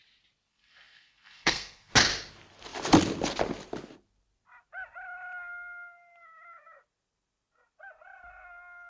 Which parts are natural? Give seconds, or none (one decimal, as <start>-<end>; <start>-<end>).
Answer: 0.0-0.5; 1.9-8.9